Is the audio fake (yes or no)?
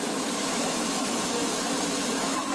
yes